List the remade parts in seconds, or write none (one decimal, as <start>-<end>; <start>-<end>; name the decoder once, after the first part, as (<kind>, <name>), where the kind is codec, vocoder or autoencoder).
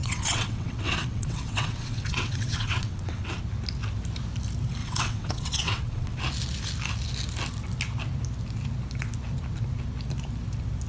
0.0-3.4 (vocoder, WaveNeXt); 4.8-6.2